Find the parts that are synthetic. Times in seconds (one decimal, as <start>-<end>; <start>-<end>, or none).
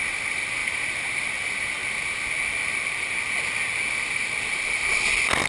none